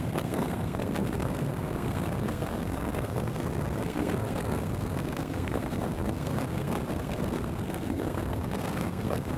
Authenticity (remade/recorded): remade